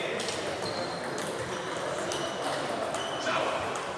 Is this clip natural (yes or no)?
yes